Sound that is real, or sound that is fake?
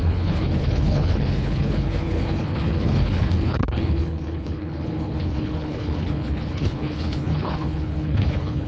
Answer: fake